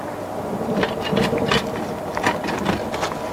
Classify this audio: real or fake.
real